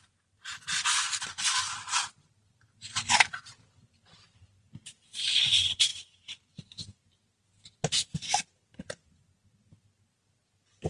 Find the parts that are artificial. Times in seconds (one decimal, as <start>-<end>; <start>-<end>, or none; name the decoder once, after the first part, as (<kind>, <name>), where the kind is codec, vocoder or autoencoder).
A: 0.0-5.9 (vocoder, BigVGAN v2); 10.1-10.9